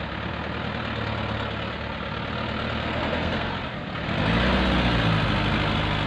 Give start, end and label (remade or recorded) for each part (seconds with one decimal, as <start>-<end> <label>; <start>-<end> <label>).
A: 0.0-2.8 recorded; 2.8-3.5 remade; 3.5-6.1 recorded